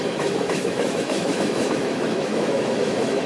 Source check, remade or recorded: remade